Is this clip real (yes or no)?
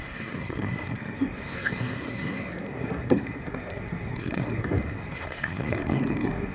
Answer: no